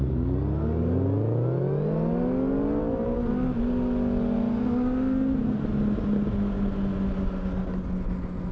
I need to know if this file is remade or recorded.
recorded